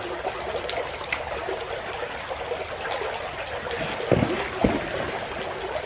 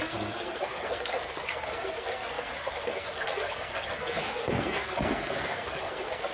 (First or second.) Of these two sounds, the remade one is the second